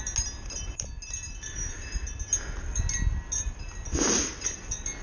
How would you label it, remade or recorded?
recorded